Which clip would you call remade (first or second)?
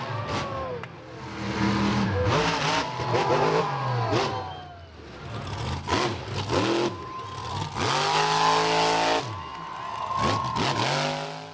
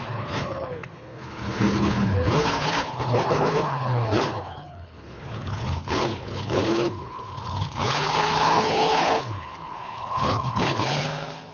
second